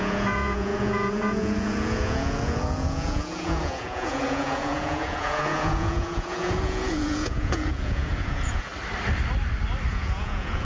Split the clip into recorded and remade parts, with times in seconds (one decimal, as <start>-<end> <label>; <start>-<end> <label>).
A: 0.0-8.7 remade; 8.7-9.9 recorded; 9.9-10.6 remade